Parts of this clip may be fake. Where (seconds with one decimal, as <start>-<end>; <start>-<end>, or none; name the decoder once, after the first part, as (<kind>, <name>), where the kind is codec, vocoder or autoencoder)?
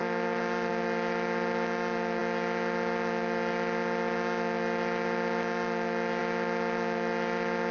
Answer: none